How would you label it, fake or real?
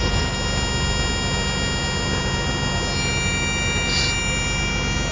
real